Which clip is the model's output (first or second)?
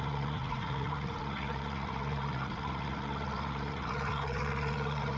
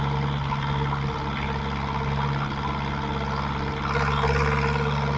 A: first